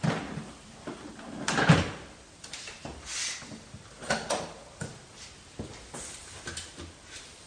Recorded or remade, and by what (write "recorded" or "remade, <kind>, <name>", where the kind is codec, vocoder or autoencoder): recorded